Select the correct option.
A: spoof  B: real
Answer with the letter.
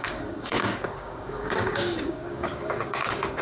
A